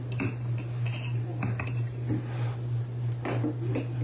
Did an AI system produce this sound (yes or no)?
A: no